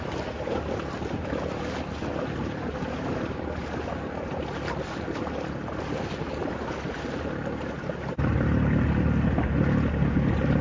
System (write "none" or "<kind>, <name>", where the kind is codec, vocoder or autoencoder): none